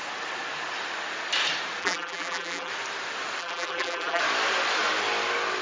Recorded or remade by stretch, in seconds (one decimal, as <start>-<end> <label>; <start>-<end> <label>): 0.0-1.8 recorded; 1.8-2.7 remade; 2.7-3.4 recorded; 3.4-4.2 remade; 4.2-5.6 recorded

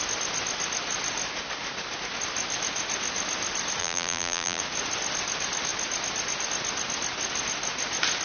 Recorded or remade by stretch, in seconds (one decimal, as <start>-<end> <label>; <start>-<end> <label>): 0.0-3.8 recorded; 3.8-4.6 remade; 4.6-8.2 recorded

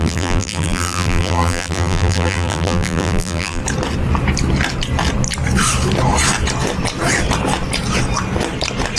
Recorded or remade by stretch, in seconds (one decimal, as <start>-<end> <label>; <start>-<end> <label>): 0.0-3.6 remade; 3.6-9.0 recorded